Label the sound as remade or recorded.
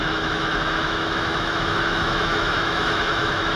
remade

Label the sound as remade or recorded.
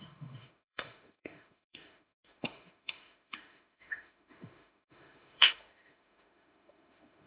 remade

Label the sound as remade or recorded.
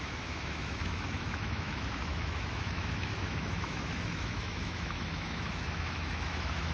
remade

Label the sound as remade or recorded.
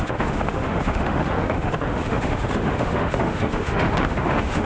remade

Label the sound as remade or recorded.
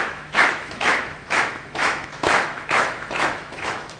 remade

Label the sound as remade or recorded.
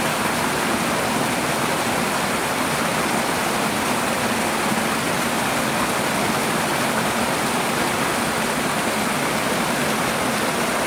recorded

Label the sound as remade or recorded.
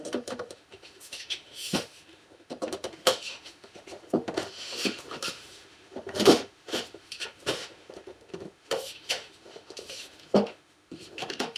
remade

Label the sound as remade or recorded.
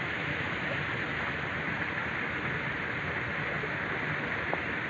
recorded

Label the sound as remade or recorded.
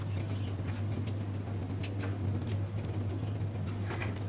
recorded